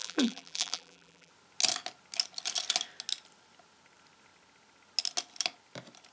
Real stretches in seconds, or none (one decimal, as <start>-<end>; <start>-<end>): 1.3-6.1